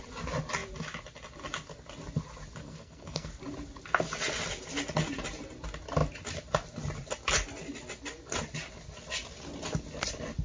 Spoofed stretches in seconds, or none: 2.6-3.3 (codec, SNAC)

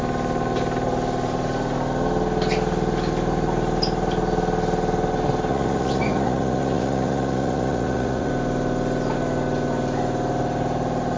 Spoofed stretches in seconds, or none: 5.5-8.3 (vocoder, Vocos)

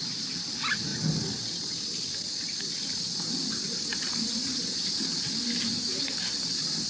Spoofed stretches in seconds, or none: none

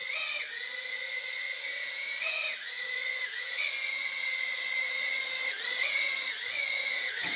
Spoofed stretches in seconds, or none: 0.0-7.4 (vocoder, Vocos)

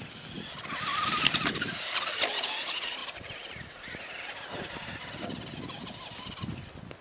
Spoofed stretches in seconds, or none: 0.9-2.0 (vocoder, BigVGAN v2); 3.0-5.2